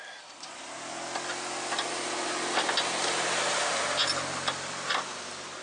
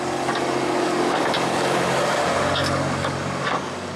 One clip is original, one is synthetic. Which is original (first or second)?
first